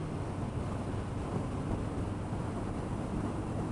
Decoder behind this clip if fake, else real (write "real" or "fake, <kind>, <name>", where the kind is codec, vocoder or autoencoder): real